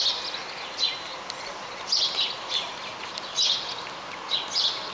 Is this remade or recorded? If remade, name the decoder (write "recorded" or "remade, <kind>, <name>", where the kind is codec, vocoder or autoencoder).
recorded